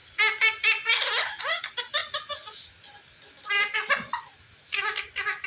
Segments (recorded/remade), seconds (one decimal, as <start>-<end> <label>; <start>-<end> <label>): 0.0-5.5 recorded